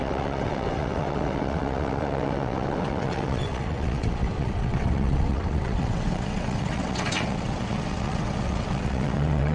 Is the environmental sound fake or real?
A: fake